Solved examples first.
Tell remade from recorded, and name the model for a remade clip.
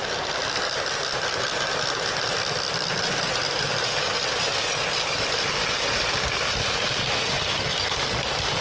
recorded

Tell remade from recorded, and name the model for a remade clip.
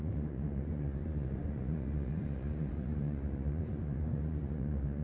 remade, vocoder, Vocos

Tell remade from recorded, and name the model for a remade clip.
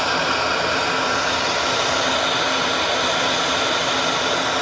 recorded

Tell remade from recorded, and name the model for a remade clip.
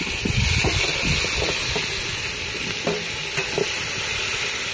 recorded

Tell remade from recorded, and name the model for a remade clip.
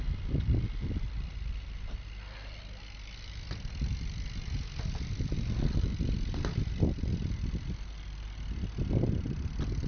recorded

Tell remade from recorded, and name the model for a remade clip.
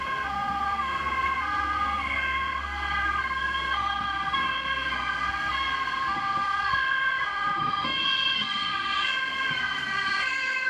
remade, codec, SNAC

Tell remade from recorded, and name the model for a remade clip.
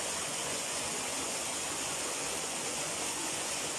remade, vocoder, Vocos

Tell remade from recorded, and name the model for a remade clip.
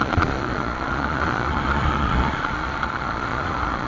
remade, vocoder, Vocos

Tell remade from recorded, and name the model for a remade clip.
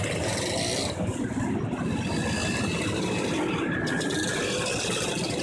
recorded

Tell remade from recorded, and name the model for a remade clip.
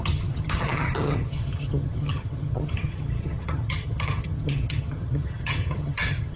remade, vocoder, HiFi-GAN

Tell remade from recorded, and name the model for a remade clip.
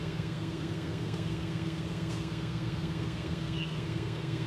remade, codec, SNAC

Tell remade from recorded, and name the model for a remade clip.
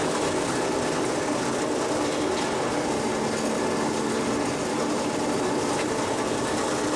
recorded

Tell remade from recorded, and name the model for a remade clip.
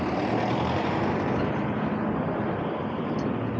recorded